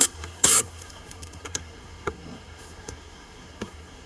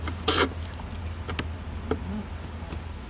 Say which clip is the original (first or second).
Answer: second